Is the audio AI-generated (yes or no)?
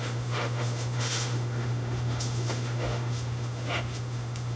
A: yes